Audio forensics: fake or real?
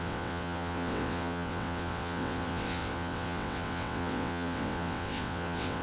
fake